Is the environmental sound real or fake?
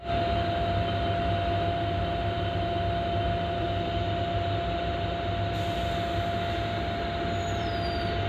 real